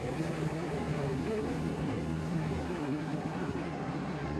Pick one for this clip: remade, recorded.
remade